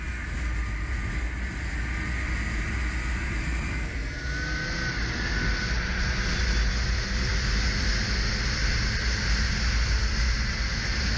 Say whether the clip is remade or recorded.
recorded